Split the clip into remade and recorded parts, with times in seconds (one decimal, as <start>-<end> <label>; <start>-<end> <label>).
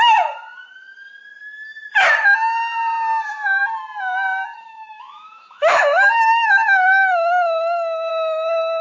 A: 0.0-4.5 recorded; 4.5-8.1 remade; 8.1-8.8 recorded